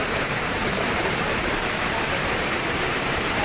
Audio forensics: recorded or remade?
remade